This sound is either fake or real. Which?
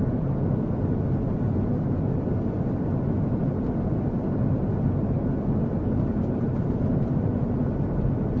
real